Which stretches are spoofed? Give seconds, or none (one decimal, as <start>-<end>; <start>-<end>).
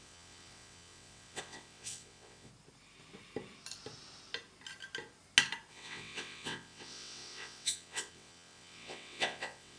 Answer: 0.0-2.5; 5.7-9.8